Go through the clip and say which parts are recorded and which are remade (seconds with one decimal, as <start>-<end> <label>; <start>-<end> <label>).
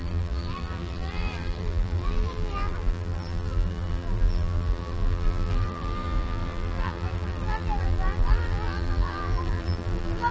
0.0-10.3 remade